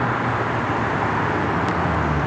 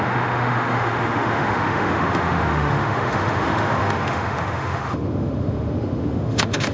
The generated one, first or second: second